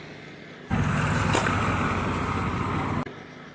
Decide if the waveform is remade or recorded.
recorded